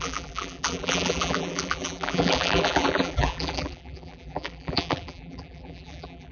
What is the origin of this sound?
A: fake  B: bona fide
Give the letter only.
A